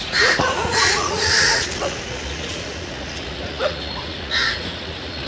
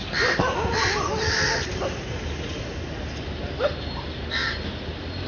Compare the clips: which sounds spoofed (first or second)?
first